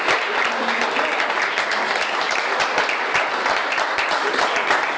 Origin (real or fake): real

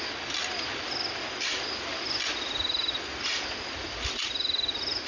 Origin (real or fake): real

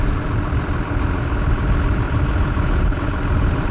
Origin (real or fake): real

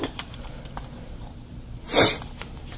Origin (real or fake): real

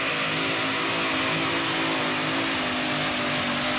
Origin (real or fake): real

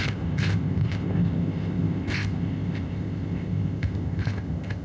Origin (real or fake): fake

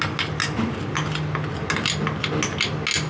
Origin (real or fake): real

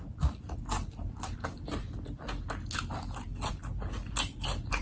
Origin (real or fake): real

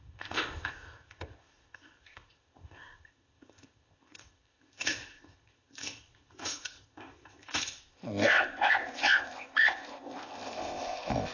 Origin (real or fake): fake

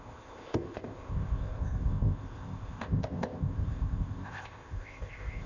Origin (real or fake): fake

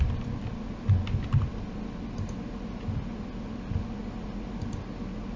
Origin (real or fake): real